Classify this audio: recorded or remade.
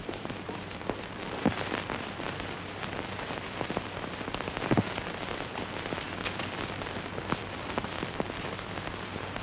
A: remade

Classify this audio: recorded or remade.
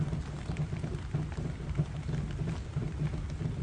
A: recorded